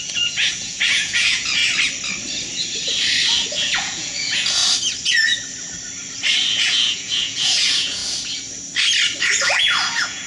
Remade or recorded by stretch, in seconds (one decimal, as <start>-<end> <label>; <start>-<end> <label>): 0.0-1.6 remade; 1.6-3.5 recorded; 3.5-4.6 remade; 4.6-6.5 recorded; 6.5-8.0 remade; 8.0-9.2 recorded; 9.2-10.3 remade